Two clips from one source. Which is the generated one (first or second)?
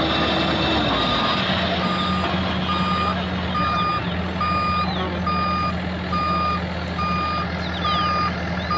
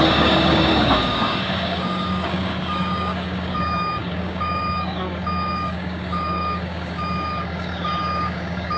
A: second